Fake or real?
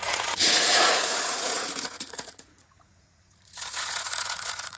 fake